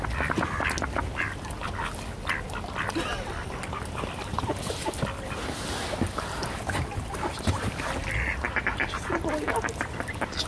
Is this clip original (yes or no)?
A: yes